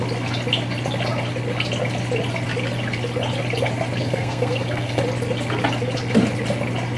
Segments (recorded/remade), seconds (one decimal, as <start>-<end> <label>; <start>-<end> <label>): 0.0-4.0 recorded; 4.0-5.0 remade; 5.0-7.0 recorded